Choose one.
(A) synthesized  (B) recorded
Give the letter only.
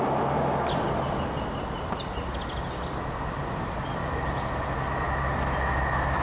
B